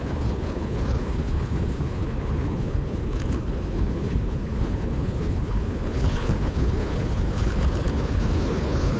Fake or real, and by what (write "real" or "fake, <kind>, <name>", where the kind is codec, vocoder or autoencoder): fake, codec, HILCodec